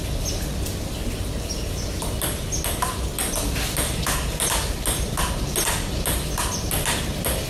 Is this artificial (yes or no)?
no